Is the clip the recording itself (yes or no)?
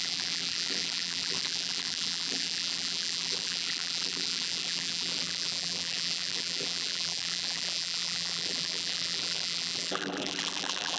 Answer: no